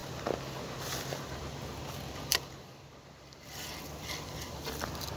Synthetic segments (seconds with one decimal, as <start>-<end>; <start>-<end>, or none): 0.6-5.2